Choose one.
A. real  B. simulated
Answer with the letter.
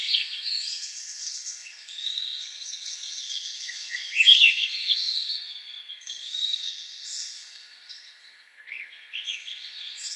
B